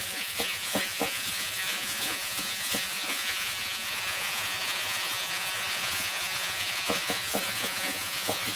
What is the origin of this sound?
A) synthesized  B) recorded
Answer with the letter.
A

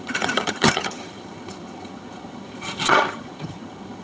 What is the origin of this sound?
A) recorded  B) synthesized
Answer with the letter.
B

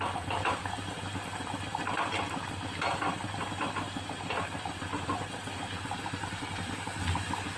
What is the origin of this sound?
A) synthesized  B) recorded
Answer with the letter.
B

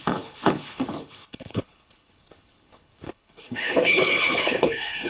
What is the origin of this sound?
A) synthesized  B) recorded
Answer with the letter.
A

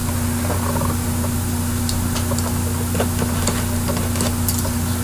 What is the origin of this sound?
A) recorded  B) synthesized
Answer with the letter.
A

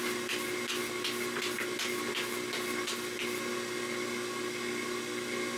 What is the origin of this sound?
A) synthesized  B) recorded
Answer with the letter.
B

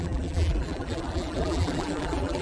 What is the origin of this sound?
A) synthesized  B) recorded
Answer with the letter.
A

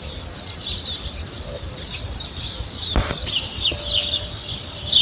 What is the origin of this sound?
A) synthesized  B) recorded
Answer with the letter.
B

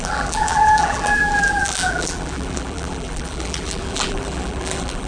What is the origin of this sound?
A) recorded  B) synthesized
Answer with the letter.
B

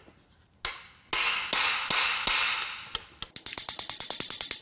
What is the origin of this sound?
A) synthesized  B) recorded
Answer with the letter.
B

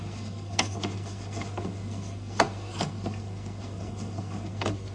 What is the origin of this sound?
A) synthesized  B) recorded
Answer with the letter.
A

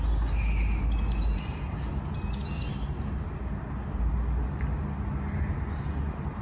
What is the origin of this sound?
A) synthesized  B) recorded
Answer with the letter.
B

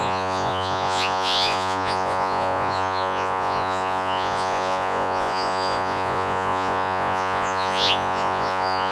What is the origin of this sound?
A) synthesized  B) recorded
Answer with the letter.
A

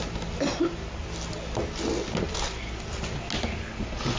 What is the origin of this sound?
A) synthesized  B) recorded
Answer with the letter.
B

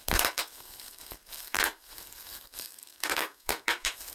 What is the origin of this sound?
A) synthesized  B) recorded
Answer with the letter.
A